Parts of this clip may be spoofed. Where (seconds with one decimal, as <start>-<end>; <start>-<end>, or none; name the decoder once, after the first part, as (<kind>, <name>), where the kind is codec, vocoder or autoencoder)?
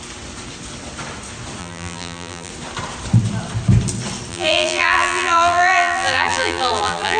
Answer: 1.6-2.5 (vocoder, BigVGAN v2); 4.3-7.2